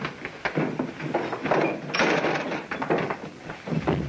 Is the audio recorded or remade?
recorded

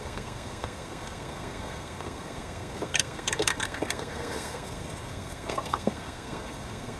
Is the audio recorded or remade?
remade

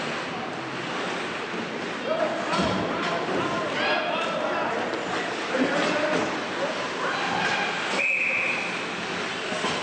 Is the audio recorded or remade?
recorded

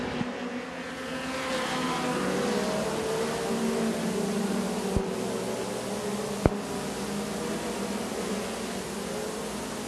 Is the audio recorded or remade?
recorded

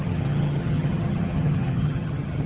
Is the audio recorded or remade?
remade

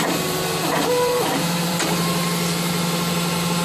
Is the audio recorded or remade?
remade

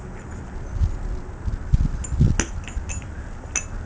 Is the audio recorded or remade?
recorded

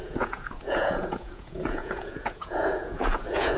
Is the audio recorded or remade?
remade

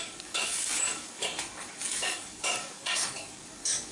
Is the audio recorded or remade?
remade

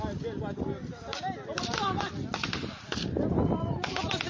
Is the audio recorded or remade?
recorded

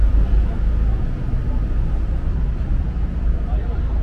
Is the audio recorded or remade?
recorded